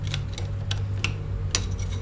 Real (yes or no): yes